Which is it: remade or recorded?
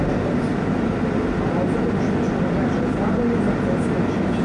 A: recorded